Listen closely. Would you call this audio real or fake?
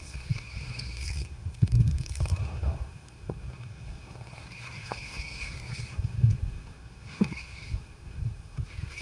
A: fake